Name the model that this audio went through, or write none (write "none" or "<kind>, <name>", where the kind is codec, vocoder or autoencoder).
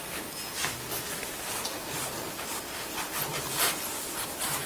none